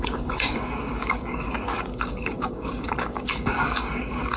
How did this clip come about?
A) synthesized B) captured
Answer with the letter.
A